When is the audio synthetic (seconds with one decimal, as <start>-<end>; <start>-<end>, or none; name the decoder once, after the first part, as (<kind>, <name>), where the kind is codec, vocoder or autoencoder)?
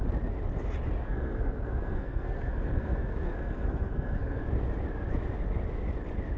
1.0-4.4 (codec, SNAC)